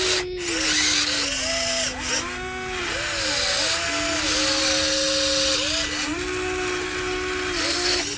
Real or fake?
real